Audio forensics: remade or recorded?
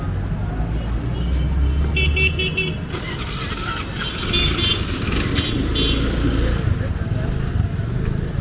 recorded